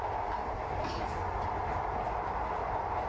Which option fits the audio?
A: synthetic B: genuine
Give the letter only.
B